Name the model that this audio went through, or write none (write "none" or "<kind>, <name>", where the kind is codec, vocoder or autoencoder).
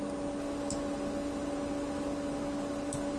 none